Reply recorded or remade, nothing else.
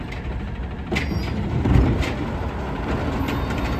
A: recorded